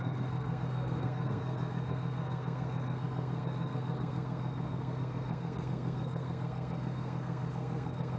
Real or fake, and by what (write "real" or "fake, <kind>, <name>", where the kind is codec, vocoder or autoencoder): fake, codec, SNAC